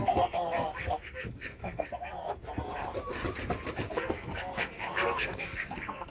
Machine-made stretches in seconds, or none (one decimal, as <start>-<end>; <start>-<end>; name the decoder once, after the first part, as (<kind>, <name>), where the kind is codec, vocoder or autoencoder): 0.0-2.4 (codec, SNAC); 3.9-6.1